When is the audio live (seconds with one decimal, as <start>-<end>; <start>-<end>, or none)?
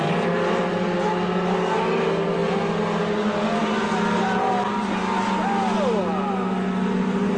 0.0-7.4